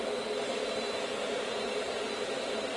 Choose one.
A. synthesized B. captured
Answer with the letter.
A